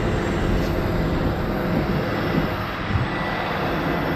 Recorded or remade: recorded